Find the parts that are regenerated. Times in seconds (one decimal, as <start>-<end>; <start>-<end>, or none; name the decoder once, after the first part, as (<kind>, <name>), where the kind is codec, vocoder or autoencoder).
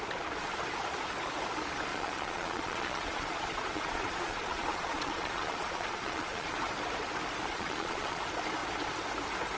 1.9-6.7 (vocoder, Vocos); 7.5-8.2